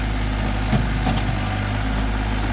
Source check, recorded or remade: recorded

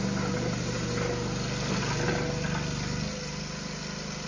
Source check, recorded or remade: recorded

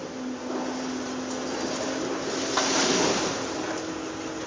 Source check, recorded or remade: recorded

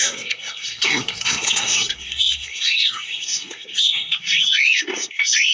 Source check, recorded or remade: remade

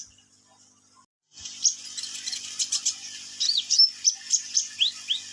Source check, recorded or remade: recorded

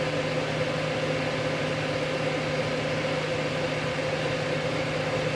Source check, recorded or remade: recorded